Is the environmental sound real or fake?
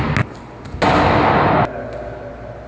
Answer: real